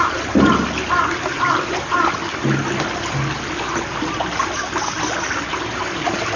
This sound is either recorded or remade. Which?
recorded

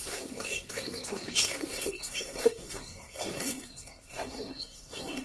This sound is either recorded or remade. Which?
remade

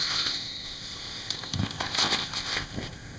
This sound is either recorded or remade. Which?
remade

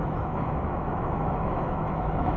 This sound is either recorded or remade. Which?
remade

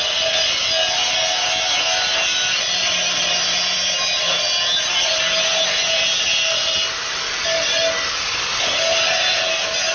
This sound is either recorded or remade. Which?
recorded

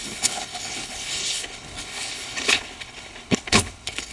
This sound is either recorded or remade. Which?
remade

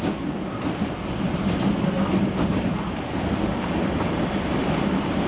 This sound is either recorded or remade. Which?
recorded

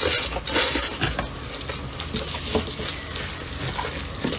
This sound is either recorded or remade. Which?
recorded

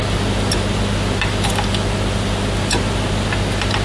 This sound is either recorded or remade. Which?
recorded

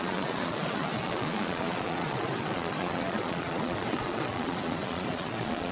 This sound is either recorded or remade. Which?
remade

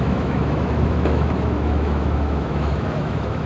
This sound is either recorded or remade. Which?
remade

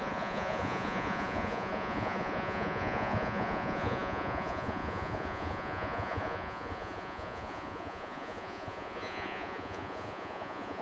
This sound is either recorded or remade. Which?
remade